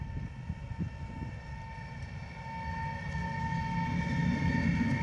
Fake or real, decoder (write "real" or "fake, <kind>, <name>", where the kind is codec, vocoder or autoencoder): real